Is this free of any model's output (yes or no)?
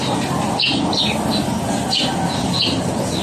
yes